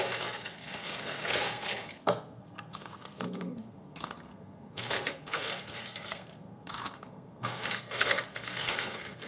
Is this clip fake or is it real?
fake